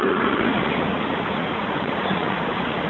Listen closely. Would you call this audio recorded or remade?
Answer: remade